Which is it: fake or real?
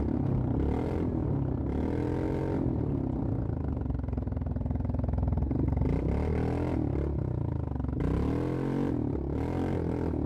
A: real